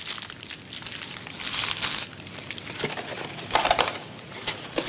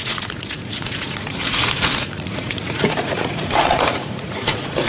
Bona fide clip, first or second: first